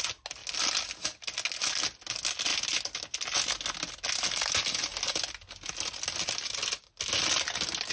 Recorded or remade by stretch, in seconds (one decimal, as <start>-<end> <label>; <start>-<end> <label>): 0.0-7.9 recorded